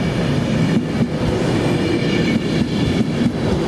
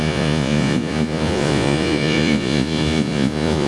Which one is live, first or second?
first